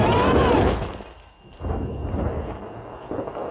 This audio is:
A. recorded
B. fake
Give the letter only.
A